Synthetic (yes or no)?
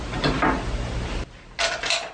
no